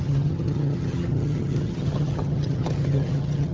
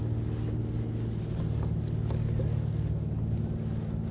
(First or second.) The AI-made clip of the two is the first